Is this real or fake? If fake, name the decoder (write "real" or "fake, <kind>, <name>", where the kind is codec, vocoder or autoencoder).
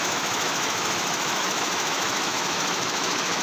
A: fake, autoencoder, DAC-VAE